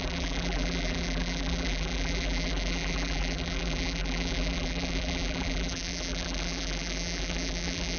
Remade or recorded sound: remade